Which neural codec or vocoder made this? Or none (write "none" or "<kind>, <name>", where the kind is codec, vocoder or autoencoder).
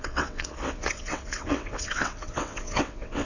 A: vocoder, WaveNeXt